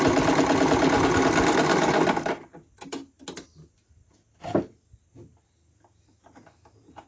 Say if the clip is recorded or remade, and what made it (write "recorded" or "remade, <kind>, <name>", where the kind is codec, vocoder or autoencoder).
recorded